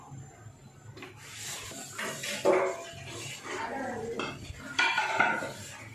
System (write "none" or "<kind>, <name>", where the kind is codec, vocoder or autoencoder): none